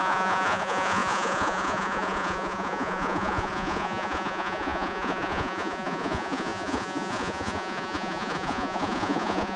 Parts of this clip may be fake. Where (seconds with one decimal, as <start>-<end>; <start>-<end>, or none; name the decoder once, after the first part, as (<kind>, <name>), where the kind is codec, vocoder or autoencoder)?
0.0-9.6 (vocoder, Vocos)